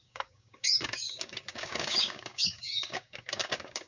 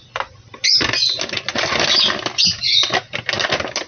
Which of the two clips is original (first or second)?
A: second